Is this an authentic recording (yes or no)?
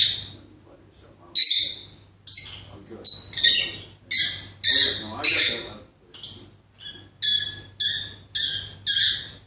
yes